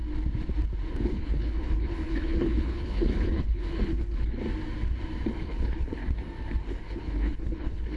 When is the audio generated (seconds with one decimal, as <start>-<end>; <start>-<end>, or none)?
1.0-4.4; 5.3-6.0; 6.6-8.0